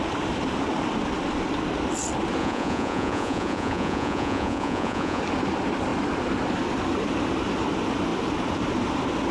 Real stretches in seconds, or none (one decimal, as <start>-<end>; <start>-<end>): 0.0-2.4; 5.2-9.3